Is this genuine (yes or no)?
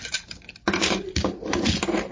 no